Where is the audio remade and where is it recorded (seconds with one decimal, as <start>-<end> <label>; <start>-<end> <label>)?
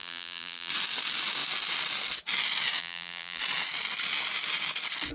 0.0-0.7 remade; 0.7-2.8 recorded; 2.8-3.4 remade; 3.4-5.1 recorded